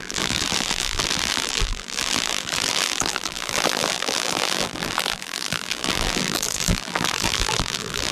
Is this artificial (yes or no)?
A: yes